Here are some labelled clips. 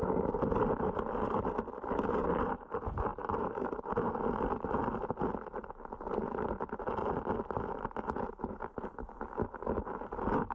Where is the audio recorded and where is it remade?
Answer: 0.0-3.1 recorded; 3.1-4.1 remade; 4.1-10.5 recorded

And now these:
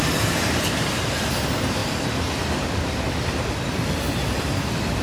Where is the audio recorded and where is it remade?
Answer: 0.0-1.8 remade; 1.8-5.0 recorded

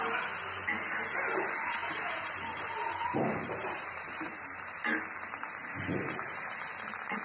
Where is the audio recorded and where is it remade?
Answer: 0.0-1.8 recorded; 1.8-4.8 remade; 4.8-7.2 recorded